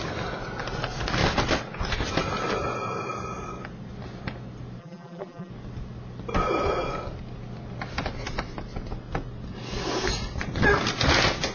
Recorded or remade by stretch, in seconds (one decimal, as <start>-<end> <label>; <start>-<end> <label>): 0.0-4.8 recorded; 4.8-5.5 remade; 5.5-11.5 recorded